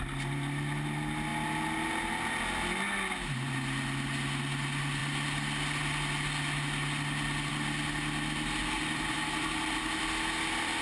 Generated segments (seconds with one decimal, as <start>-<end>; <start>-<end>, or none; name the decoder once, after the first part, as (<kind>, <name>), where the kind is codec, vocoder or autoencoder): none